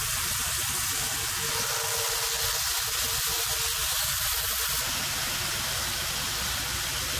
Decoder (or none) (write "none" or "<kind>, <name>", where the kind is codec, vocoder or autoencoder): none